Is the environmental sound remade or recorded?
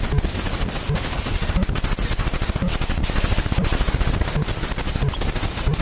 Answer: recorded